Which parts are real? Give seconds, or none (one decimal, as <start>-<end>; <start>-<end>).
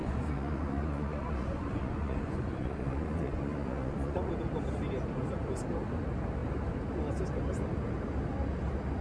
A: 4.3-9.0